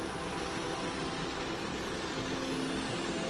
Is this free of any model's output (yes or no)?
yes